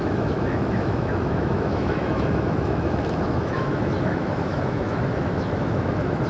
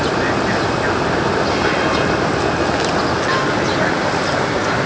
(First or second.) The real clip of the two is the second